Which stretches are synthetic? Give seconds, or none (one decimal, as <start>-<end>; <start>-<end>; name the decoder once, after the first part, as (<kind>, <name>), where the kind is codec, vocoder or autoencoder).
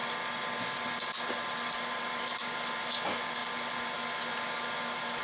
none